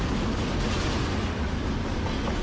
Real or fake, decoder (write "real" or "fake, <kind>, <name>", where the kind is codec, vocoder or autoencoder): real